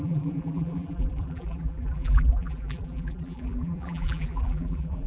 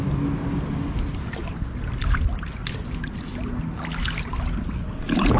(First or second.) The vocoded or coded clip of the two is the first